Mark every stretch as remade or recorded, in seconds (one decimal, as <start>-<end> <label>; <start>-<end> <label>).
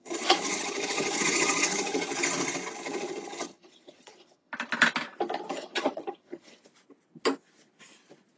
0.0-2.1 remade; 2.1-2.8 recorded; 2.8-4.5 remade; 4.5-5.5 recorded; 5.5-6.6 remade; 6.6-8.4 recorded